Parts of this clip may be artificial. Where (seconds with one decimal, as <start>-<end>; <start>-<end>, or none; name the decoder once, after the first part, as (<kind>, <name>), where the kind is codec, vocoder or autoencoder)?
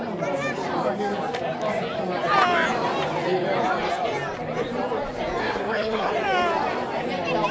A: 5.4-6.1 (codec, SNAC)